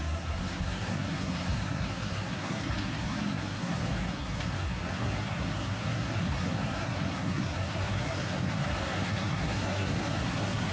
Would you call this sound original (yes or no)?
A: no